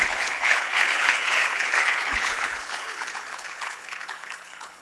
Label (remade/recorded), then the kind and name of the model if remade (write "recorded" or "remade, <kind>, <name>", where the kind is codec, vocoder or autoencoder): remade, codec, HILCodec